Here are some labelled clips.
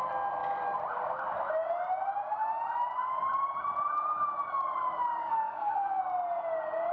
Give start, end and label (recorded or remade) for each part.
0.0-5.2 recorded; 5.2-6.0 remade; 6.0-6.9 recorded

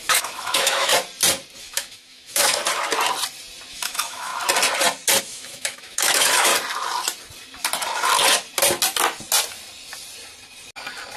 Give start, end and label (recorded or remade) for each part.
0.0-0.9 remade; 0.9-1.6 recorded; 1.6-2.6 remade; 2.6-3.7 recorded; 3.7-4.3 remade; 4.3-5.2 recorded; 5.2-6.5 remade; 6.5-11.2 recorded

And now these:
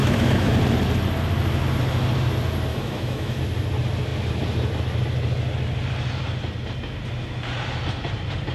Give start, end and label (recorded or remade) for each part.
0.0-0.5 remade; 0.5-2.7 recorded; 2.7-3.4 remade; 3.4-8.5 recorded